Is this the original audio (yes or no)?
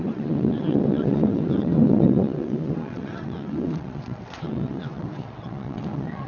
no